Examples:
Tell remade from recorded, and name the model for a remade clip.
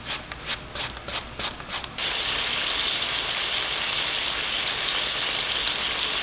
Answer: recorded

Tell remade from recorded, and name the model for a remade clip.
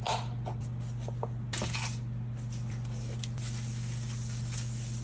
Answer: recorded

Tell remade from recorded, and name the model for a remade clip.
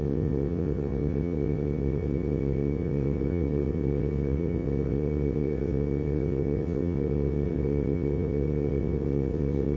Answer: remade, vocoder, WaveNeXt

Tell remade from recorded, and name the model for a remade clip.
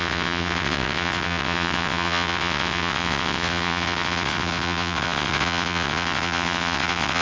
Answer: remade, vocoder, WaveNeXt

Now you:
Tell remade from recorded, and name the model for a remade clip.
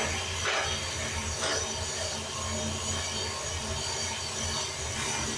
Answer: recorded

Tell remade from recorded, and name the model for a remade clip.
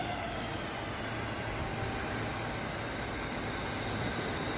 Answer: recorded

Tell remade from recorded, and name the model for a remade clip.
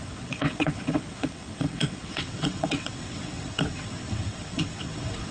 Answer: remade, vocoder, WaveNeXt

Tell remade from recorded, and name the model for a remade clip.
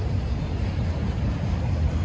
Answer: recorded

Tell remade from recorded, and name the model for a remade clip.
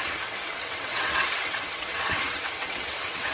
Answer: remade, vocoder, WaveNeXt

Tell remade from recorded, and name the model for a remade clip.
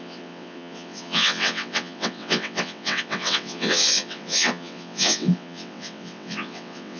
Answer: remade, vocoder, WaveNeXt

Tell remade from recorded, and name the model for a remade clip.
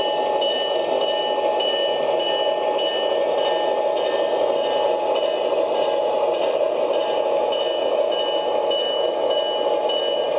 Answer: recorded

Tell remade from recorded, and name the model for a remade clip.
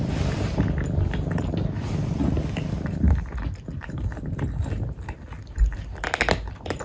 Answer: recorded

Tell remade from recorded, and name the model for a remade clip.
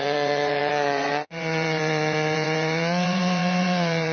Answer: remade, vocoder, WaveNeXt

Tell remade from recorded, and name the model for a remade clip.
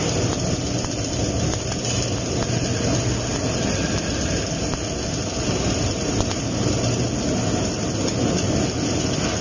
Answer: recorded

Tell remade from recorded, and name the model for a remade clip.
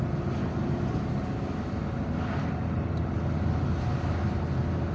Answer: recorded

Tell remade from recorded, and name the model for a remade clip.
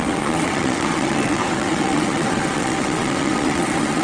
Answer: remade, vocoder, WaveNeXt